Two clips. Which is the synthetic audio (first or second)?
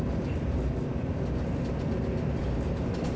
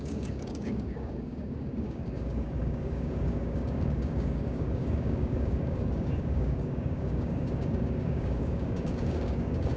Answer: second